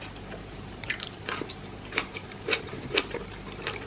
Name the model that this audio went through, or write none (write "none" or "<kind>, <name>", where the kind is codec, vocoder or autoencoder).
vocoder, BigVGAN v2